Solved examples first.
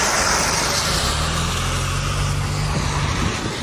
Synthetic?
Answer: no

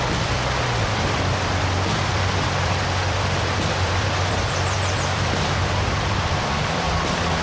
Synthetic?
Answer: yes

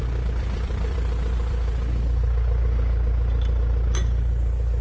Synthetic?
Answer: yes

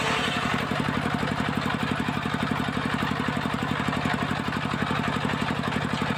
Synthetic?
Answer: no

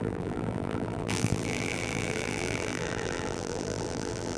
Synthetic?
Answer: yes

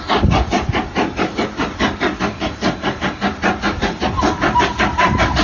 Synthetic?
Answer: no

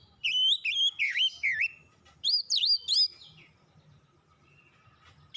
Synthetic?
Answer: no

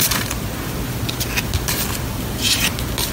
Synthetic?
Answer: no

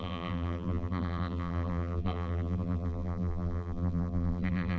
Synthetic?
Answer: yes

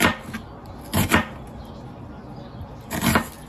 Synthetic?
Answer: no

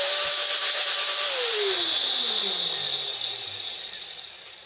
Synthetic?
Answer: yes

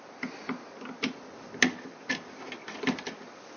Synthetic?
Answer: no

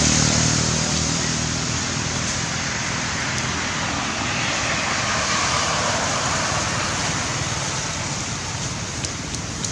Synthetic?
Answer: yes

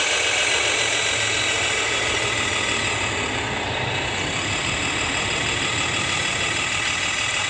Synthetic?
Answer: no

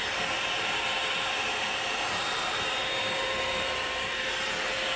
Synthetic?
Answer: yes